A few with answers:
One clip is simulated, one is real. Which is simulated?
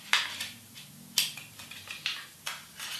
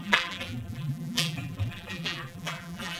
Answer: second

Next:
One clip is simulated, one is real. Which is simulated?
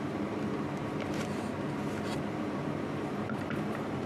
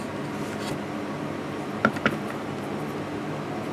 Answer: first